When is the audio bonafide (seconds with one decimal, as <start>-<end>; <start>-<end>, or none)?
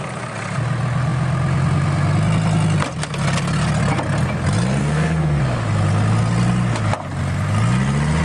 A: 0.0-4.8; 5.4-8.2